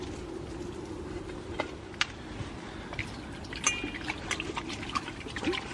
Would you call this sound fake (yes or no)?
no